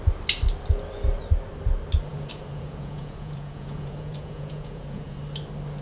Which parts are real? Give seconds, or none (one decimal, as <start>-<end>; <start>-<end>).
0.0-2.1; 5.2-5.8